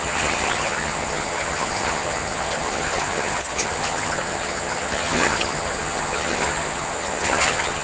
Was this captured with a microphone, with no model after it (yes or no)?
no